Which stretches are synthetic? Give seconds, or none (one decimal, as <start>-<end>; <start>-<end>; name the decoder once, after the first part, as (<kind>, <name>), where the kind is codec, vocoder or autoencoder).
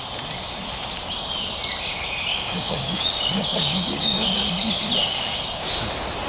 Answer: 2.3-4.5 (codec, DAC); 5.0-5.7